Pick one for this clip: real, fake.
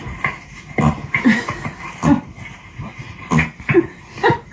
real